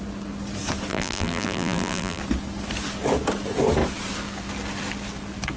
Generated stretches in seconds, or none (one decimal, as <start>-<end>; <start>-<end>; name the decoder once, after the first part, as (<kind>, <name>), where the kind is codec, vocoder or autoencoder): 0.9-2.2 (vocoder, BigVGAN v2)

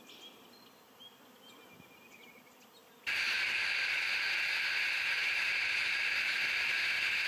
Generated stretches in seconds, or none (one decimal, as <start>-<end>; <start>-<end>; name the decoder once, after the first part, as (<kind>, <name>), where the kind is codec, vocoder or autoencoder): none

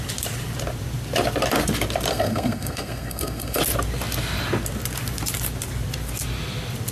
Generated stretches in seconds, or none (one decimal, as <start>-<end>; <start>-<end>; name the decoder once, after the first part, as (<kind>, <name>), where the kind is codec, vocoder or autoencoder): 2.1-3.6 (codec, SNAC)